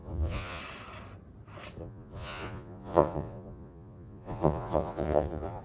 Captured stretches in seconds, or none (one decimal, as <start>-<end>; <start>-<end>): 0.6-1.8